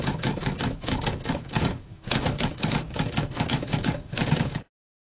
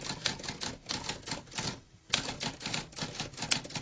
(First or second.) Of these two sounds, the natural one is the second